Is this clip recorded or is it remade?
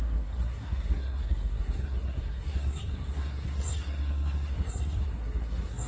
remade